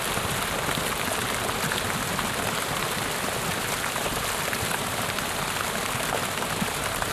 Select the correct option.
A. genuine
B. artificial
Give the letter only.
A